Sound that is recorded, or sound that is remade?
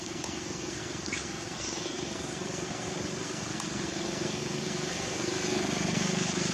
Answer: remade